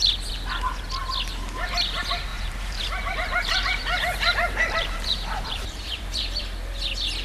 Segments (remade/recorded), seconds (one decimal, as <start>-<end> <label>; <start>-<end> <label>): 0.0-2.3 recorded; 2.3-6.4 remade; 6.4-7.2 recorded